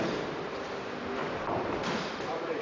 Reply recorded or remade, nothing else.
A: remade